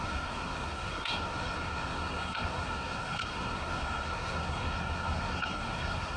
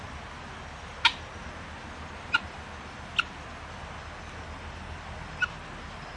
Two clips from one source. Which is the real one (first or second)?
second